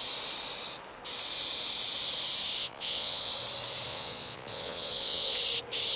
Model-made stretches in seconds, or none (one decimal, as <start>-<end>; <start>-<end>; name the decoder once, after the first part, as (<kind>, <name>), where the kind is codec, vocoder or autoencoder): 2.6-3.3 (vocoder, Vocos); 3.9-5.4